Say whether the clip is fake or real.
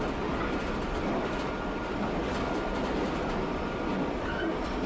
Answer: real